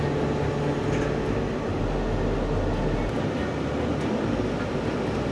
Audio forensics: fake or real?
real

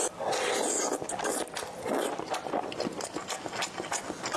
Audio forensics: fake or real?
real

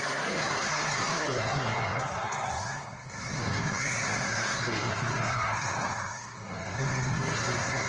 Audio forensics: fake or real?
fake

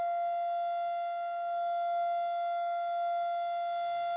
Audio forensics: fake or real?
real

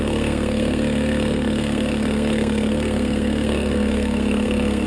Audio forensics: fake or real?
fake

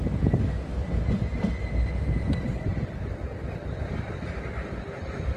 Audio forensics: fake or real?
real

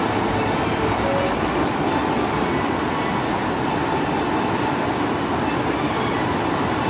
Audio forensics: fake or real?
real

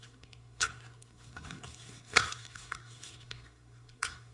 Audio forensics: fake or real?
fake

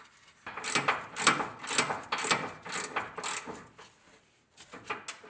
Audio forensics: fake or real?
real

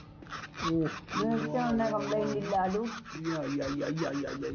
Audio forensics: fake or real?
real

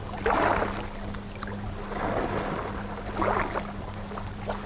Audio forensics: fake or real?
real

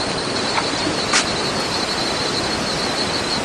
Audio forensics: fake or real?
real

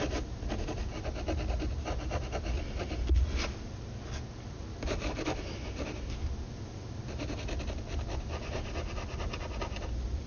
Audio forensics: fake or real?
real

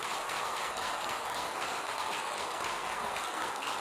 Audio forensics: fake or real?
fake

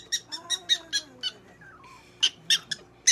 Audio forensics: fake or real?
real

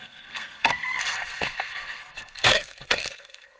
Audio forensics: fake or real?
fake